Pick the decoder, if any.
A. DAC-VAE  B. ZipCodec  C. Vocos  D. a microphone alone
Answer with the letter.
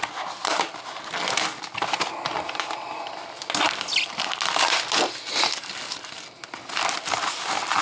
D